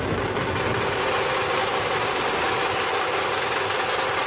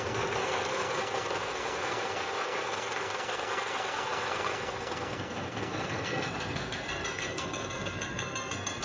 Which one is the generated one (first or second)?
second